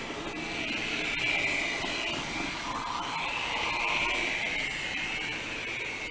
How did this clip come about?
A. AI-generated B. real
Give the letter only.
B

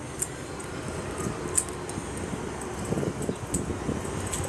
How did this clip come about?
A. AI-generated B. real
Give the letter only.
B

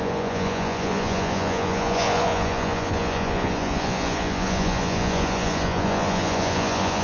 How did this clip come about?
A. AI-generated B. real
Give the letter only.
A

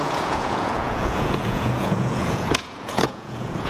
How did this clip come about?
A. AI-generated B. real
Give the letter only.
A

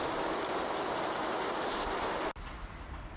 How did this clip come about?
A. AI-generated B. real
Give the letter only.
B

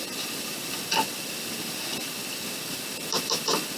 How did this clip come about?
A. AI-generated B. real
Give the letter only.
B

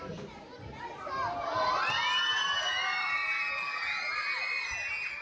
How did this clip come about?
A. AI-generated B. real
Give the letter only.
B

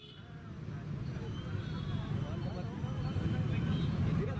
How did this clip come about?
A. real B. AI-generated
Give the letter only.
A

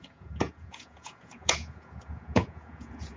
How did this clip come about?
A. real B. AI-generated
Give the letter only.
B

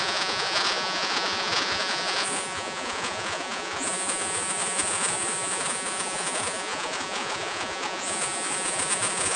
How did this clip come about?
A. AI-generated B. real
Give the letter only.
A